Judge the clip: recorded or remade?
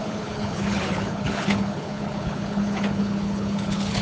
remade